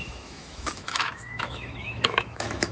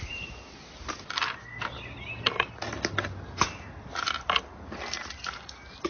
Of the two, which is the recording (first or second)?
second